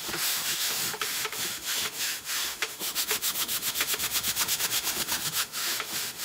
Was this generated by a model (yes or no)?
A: yes